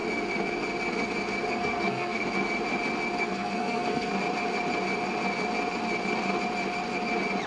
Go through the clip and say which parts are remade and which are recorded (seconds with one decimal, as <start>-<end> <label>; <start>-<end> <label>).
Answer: 0.0-1.5 recorded; 1.5-2.2 remade; 2.2-3.2 recorded; 3.2-4.1 remade; 4.1-7.5 recorded

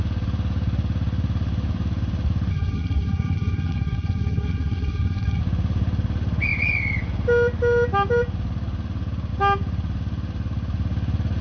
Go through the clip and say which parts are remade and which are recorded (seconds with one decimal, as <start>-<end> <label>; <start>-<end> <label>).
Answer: 0.0-2.5 recorded; 2.5-5.4 remade; 5.4-11.4 recorded